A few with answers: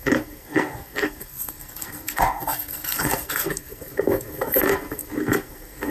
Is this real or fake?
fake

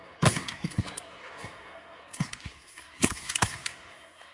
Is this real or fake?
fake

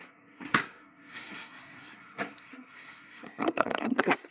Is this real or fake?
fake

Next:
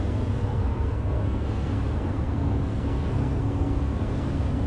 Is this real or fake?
fake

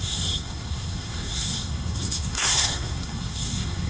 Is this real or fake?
fake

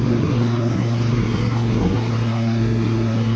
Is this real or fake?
fake